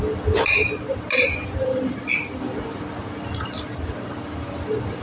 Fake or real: real